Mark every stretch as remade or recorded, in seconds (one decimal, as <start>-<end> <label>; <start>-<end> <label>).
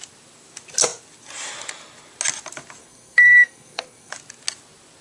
0.0-2.8 recorded; 2.8-4.1 remade; 4.1-5.0 recorded